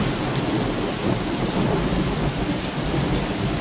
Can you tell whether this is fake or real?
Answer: real